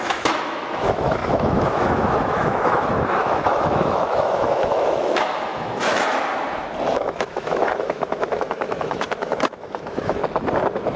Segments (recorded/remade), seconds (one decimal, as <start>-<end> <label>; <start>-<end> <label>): 0.0-6.3 remade; 6.3-6.9 recorded; 6.9-10.2 remade; 10.2-11.0 recorded